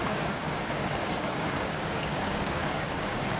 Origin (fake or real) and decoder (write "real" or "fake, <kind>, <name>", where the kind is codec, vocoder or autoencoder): fake, codec, DAC